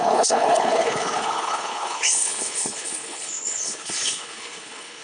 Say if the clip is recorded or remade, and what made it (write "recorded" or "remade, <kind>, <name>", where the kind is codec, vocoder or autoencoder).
remade, codec, HILCodec